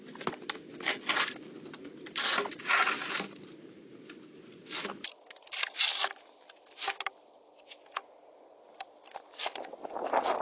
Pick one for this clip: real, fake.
real